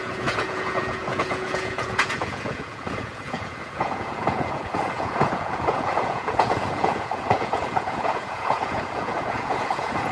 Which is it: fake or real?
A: fake